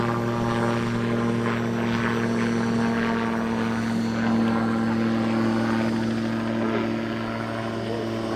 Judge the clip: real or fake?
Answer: real